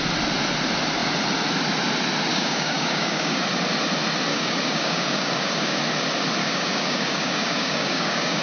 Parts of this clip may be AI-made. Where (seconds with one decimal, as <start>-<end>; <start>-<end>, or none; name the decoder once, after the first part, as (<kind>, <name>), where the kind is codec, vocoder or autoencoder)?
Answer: 2.3-3.4 (codec, DAC); 4.3-5.8; 6.4-8.4